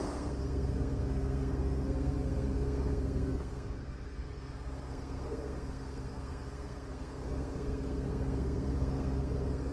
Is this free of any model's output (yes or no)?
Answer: no